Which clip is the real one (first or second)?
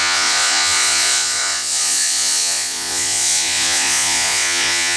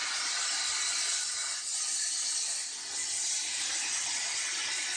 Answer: second